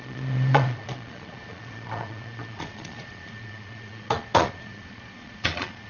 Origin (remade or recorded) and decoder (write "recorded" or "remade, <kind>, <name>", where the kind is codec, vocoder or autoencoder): remade, vocoder, Vocos